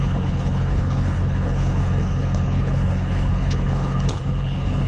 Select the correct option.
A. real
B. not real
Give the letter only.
B